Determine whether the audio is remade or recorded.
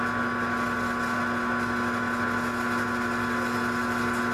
recorded